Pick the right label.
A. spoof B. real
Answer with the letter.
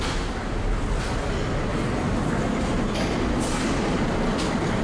B